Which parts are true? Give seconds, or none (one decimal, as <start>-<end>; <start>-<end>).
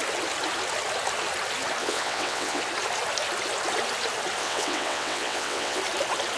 0.0-1.8; 2.6-4.4; 5.8-6.4